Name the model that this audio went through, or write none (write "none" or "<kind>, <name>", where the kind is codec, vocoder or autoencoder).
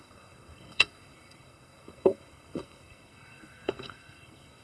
codec, SNAC